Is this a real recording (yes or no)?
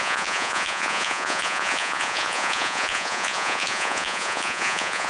no